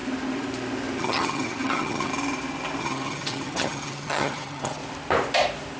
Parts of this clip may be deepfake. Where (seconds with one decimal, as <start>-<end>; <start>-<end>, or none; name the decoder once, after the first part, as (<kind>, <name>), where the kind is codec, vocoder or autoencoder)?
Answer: 1.0-2.1 (vocoder, HiFi-GAN); 2.8-4.8